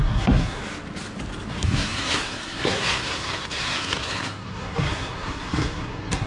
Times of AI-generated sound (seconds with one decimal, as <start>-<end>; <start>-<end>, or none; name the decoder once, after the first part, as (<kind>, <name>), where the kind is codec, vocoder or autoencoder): 0.0-0.6 (codec, SNAC); 1.5-6.3